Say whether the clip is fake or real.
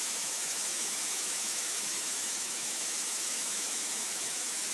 fake